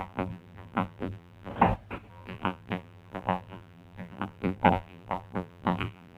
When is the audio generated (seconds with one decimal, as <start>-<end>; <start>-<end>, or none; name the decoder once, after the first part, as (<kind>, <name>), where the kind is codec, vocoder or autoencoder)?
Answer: 0.0-1.5 (vocoder, BigVGAN v2); 2.1-6.2